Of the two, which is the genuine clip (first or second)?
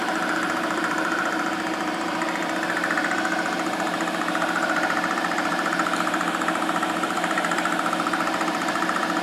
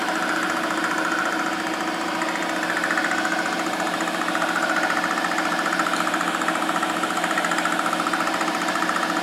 second